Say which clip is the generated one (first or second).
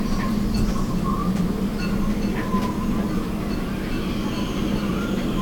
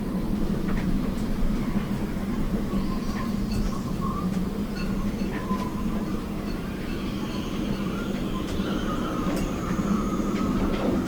second